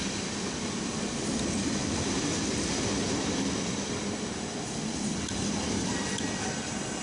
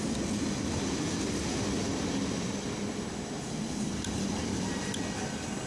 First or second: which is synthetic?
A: first